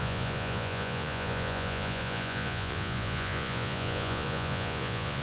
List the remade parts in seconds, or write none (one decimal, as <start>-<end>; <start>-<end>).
0.0-5.2